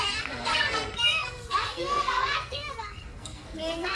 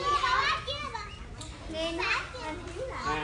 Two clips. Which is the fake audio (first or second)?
first